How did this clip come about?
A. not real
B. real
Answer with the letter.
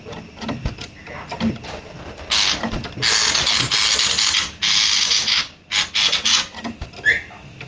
B